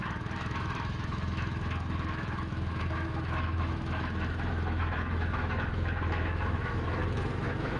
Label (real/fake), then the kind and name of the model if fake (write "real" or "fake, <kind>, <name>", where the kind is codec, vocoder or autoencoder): fake, autoencoder, DAC-VAE